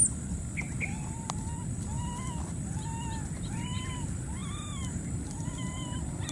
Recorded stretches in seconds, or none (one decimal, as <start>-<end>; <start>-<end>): 0.0-6.3